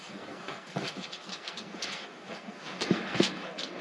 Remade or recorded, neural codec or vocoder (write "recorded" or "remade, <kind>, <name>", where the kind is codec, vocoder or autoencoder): remade, codec, SNAC